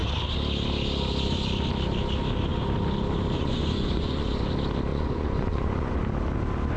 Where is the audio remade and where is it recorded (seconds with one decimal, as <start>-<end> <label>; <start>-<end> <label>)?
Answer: 0.0-3.4 recorded; 3.4-4.5 remade; 4.5-4.9 recorded; 4.9-6.0 remade; 6.0-6.8 recorded